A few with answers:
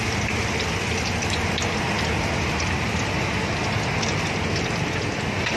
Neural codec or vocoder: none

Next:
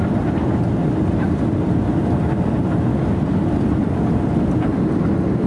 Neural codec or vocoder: none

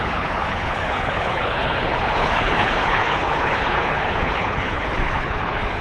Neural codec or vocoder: codec, HILCodec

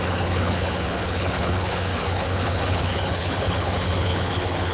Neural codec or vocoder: codec, HILCodec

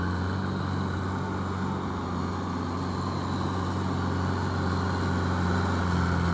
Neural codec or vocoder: none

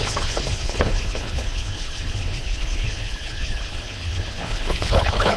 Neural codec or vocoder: codec, HILCodec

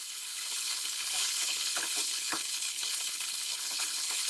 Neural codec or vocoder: codec, HILCodec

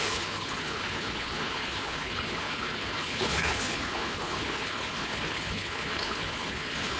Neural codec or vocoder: codec, HILCodec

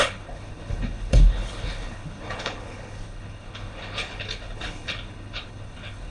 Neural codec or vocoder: codec, HILCodec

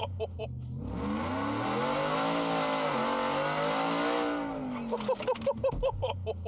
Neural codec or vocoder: none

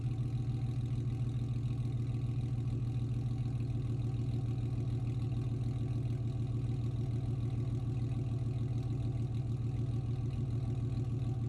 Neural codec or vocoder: none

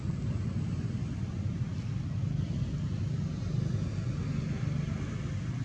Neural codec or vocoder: none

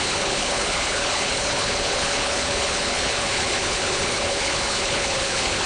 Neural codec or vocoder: codec, HILCodec